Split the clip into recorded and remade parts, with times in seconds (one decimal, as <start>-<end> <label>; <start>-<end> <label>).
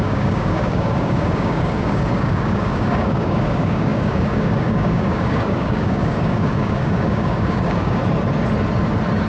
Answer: 0.0-8.0 remade; 8.0-9.3 recorded